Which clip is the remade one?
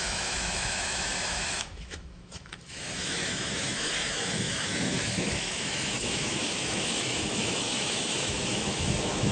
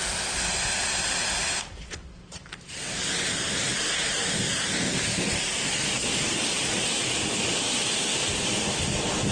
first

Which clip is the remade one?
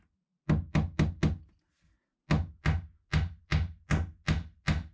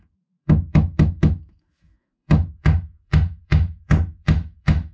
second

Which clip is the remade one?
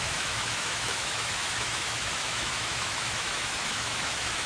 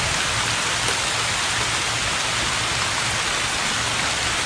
first